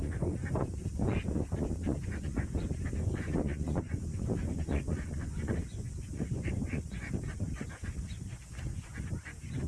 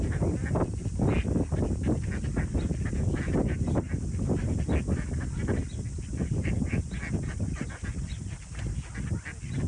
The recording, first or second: second